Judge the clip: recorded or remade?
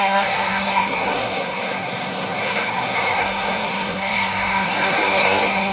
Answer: remade